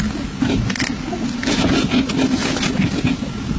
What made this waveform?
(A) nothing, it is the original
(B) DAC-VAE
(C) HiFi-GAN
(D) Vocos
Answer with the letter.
A